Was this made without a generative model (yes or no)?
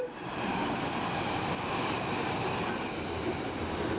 yes